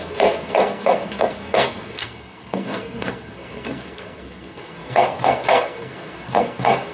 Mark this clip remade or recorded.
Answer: remade